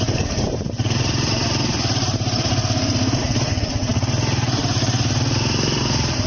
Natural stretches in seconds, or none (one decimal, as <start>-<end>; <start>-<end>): 2.5-3.2